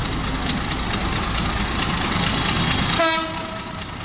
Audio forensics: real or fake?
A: real